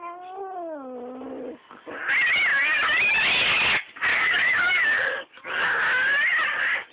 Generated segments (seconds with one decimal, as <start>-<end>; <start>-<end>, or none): 4.1-5.3